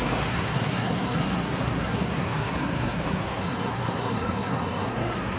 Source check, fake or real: fake